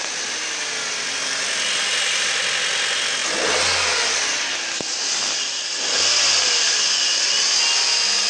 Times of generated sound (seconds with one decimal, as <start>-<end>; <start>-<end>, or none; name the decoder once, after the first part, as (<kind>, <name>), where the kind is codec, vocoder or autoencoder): none